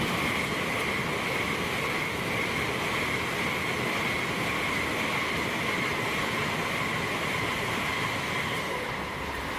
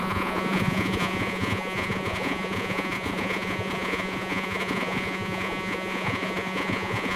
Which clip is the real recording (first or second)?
first